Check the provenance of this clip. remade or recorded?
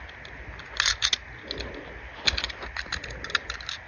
recorded